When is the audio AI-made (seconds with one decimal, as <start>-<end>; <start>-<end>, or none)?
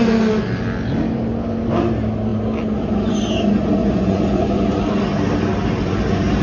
3.8-4.8